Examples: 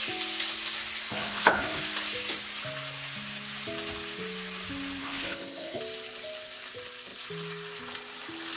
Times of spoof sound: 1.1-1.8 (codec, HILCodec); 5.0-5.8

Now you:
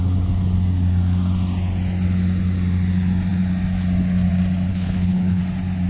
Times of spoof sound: 4.7-5.4 (codec, HILCodec)

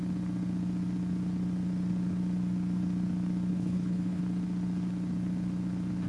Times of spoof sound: 3.5-4.2 (codec, HILCodec)

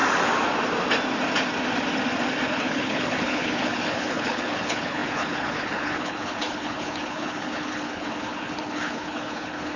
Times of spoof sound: 2.5-9.8 (codec, HILCodec)